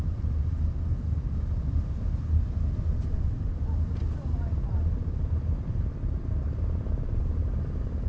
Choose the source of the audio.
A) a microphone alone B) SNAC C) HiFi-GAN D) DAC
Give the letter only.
A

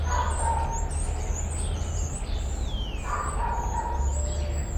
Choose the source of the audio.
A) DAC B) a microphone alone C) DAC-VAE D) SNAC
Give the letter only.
B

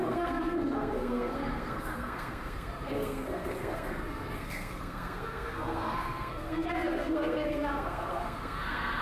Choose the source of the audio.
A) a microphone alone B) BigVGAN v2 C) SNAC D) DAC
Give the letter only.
C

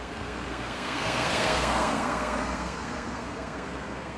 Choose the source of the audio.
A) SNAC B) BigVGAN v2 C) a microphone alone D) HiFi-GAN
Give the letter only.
A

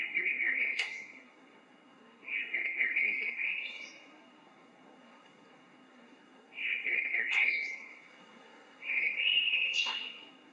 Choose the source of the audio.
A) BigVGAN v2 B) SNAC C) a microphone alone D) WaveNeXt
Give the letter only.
B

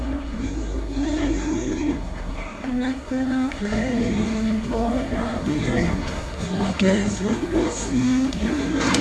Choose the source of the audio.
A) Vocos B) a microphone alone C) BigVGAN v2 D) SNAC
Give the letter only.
D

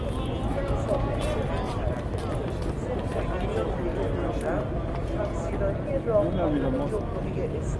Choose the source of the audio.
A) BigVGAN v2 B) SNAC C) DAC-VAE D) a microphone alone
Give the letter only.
D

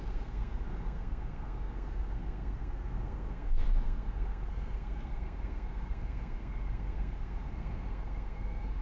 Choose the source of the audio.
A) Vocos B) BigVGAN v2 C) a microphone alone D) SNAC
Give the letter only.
D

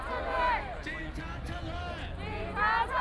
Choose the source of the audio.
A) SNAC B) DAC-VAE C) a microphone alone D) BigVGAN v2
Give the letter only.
C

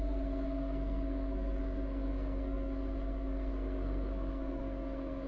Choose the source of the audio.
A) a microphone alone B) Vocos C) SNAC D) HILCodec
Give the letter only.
C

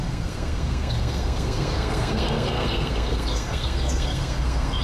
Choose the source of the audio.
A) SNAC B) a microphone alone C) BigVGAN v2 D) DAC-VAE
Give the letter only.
A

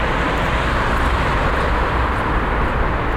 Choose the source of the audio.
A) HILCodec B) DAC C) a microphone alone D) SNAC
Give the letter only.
C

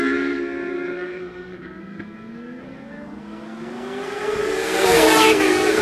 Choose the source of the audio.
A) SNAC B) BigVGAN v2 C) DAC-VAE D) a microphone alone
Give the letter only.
A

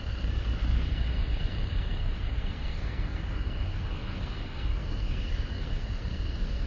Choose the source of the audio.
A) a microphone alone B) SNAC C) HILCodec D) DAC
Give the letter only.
B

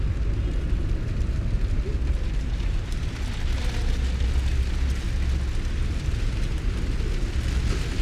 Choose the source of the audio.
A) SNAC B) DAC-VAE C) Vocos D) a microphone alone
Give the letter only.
D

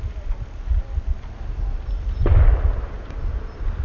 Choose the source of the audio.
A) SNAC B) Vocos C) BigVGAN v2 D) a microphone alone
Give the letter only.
D